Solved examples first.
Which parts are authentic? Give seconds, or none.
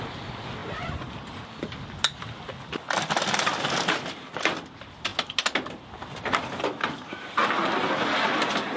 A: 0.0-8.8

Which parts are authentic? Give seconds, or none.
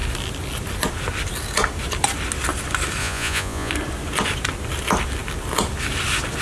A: 0.0-3.0; 3.7-6.4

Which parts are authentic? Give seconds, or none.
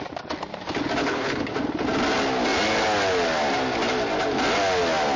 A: 0.0-1.0; 1.5-5.2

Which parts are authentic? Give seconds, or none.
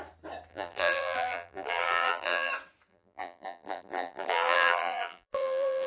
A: 0.0-0.5; 2.5-2.9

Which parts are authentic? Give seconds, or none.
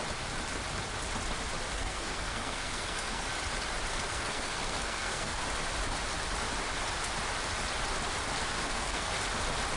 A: 0.0-1.7; 3.3-3.9; 5.4-8.5; 9.1-9.8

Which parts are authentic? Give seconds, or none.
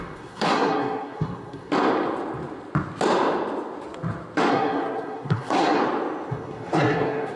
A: 1.7-4.5; 5.8-6.3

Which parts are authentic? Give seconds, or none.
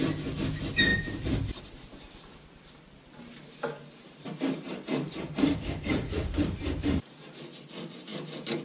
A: 0.0-0.9; 1.6-3.8; 7.4-8.1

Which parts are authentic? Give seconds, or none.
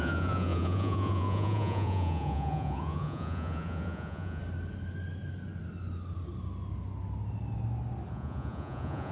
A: 4.4-8.1